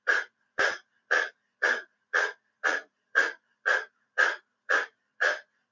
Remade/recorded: remade